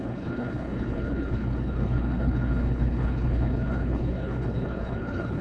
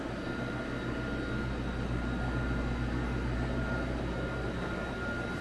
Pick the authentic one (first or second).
second